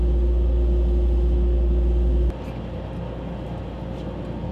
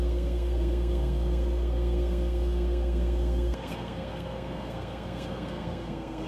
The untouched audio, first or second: first